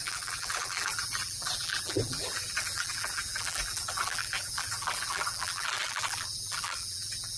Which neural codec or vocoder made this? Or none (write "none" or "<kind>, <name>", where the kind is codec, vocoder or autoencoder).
vocoder, BigVGAN v2